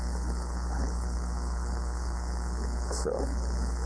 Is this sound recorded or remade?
remade